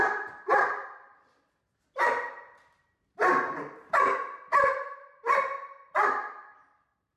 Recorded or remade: recorded